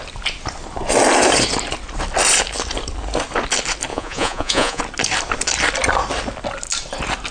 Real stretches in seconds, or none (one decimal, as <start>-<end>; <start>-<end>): 0.0-3.9; 4.8-7.3